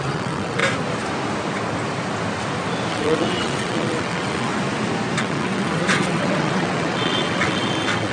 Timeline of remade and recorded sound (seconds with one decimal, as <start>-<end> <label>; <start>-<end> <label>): 0.0-0.6 remade; 0.6-2.9 recorded; 2.9-4.5 remade; 4.5-5.2 recorded; 5.2-8.1 remade

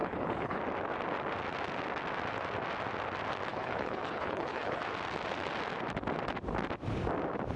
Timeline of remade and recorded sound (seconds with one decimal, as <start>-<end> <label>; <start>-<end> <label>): 0.0-0.6 remade; 0.6-3.5 recorded; 3.5-4.8 remade; 4.8-7.6 recorded

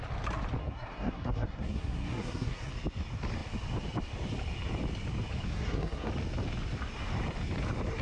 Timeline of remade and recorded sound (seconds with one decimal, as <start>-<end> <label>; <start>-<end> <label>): 0.0-0.6 recorded; 0.6-2.7 remade; 2.7-5.5 recorded; 5.5-6.1 remade; 6.1-8.0 recorded

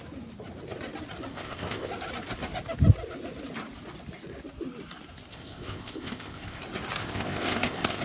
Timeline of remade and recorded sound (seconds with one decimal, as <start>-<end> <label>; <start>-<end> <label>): 0.0-1.3 recorded; 1.3-1.9 remade; 1.9-5.3 recorded; 5.3-6.6 remade; 6.6-7.0 recorded; 7.0-8.0 remade

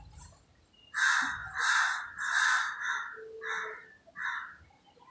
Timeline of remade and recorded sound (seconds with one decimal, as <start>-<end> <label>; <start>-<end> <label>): 0.0-5.1 recorded

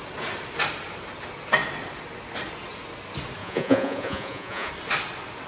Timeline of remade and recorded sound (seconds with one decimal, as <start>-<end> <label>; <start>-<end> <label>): 0.0-3.4 recorded; 3.4-4.7 remade; 4.7-5.5 recorded

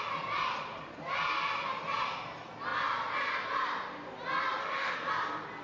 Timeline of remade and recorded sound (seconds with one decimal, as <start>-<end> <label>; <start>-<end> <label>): 0.0-4.6 recorded; 4.6-5.1 remade; 5.1-5.6 recorded